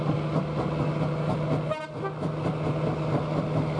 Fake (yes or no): no